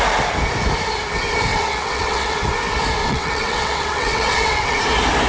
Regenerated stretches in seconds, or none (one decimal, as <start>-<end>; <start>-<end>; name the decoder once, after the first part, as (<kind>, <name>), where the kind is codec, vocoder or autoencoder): 1.5-2.5 (vocoder, WaveNeXt); 3.0-4.8